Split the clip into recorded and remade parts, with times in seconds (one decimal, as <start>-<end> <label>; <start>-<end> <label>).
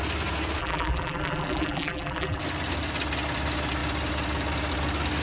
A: 0.0-0.6 recorded; 0.6-2.4 remade; 2.4-5.2 recorded